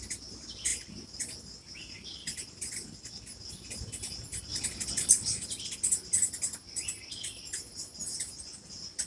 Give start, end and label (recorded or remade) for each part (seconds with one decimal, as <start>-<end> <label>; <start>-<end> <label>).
0.0-9.1 recorded